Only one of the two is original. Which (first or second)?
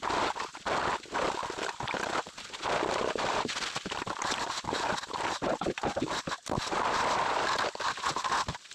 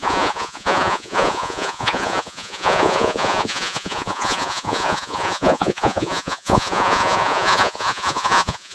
first